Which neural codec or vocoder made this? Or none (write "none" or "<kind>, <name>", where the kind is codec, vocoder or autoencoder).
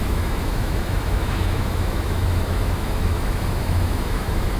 autoencoder, DAC-VAE